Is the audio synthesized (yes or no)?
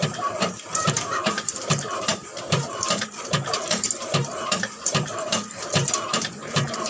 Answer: yes